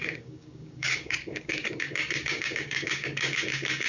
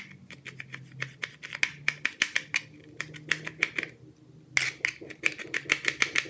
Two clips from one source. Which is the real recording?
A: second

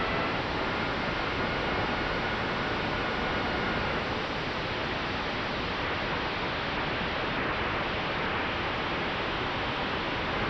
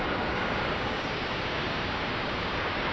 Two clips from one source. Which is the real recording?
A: first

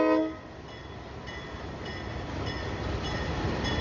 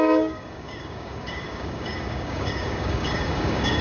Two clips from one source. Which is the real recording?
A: first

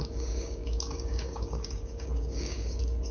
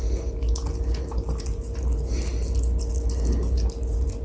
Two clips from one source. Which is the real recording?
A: second